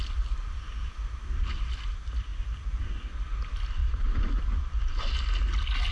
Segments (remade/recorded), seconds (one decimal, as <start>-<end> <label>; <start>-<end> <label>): 0.0-5.9 recorded